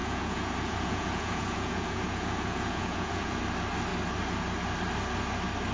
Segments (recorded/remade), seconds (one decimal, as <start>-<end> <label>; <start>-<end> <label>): 0.0-3.4 remade; 3.4-5.7 recorded